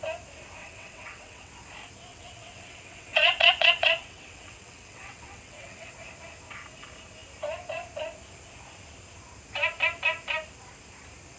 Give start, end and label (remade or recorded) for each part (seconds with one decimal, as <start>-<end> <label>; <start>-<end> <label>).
0.0-0.6 recorded; 0.6-1.5 remade; 1.5-2.1 recorded; 2.1-5.9 remade; 5.9-11.4 recorded